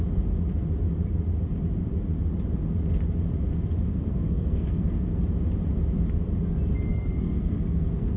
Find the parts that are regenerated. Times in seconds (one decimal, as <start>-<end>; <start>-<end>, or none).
3.9-5.2; 6.9-8.2